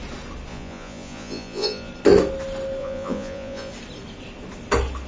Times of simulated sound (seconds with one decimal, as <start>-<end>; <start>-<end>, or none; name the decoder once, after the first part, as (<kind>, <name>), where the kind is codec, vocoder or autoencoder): 0.5-1.9 (vocoder, Vocos); 2.8-3.7